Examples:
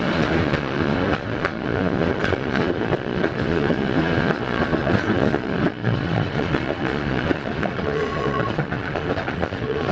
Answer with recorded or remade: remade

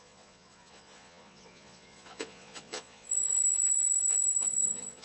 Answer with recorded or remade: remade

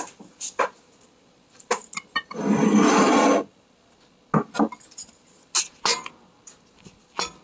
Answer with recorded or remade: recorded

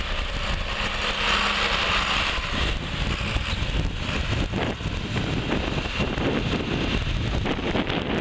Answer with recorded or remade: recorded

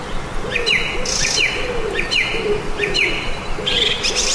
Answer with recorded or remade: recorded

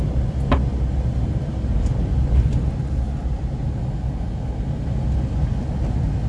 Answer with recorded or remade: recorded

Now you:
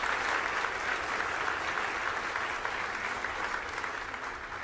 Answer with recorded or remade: recorded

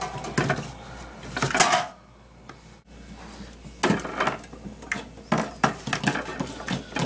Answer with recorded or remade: recorded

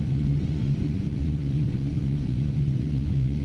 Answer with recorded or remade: remade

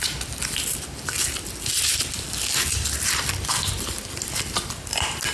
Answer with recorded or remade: recorded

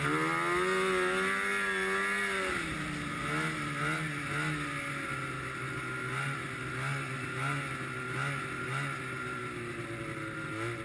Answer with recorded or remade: recorded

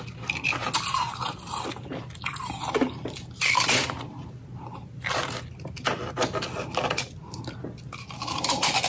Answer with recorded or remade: recorded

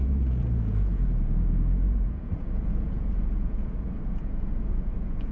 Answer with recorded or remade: remade